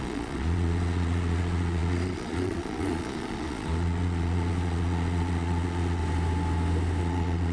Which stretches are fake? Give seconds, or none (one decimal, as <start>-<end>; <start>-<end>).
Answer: 0.0-6.0; 7.0-7.5